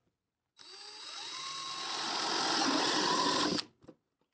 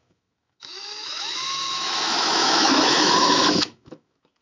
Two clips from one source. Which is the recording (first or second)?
first